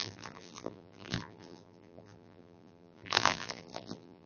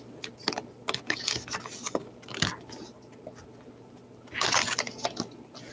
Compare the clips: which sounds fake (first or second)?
first